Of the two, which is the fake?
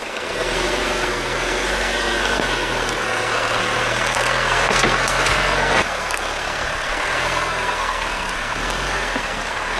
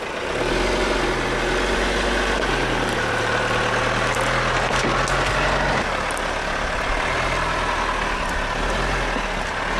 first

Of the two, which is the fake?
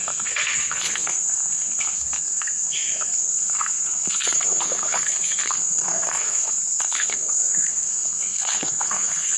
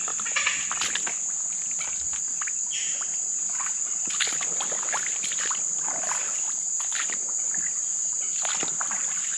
first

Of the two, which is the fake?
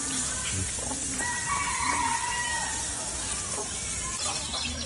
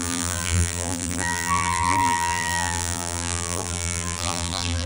second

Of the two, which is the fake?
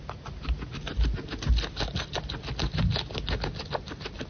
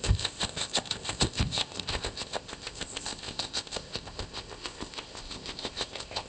second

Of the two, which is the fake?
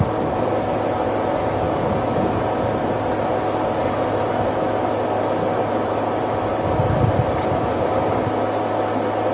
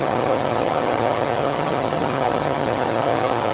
second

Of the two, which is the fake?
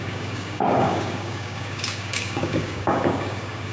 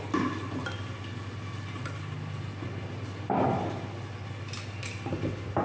first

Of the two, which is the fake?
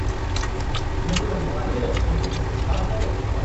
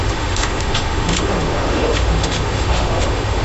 second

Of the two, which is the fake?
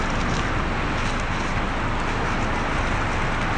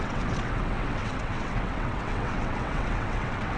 second